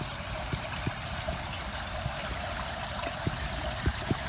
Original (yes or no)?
no